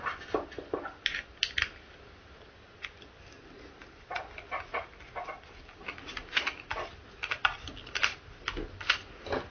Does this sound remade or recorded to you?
recorded